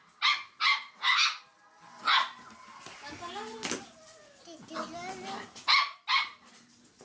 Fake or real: real